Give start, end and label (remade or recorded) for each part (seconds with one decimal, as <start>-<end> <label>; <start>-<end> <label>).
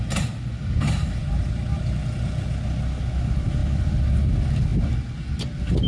0.0-5.9 recorded